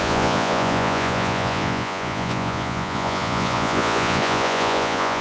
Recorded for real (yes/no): no